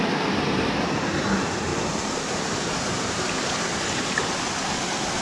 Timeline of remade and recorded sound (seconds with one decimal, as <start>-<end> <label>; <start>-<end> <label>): 0.0-1.7 recorded; 1.7-4.3 remade; 4.3-5.2 recorded